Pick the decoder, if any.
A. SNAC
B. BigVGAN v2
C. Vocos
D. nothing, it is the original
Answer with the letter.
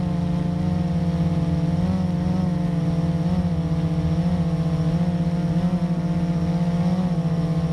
D